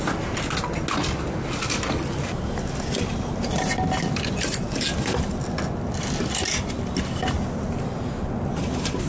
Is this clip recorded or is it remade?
recorded